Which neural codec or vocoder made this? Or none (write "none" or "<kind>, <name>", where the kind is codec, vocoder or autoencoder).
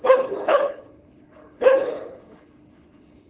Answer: codec, HILCodec